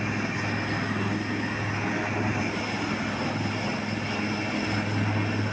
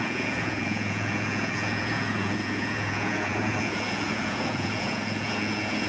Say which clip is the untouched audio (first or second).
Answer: first